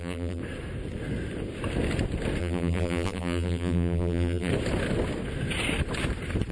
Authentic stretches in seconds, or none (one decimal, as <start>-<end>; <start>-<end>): 0.4-2.4; 4.5-6.5